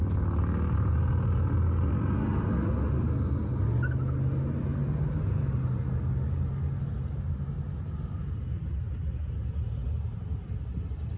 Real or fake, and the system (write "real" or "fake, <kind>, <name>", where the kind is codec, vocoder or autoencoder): real